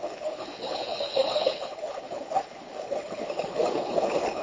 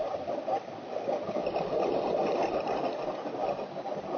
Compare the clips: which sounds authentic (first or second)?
second